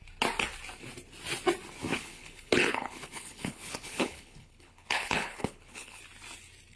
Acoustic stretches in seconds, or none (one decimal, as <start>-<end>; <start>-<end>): 0.0-1.9; 6.0-6.8